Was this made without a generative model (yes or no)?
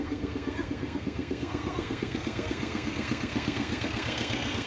no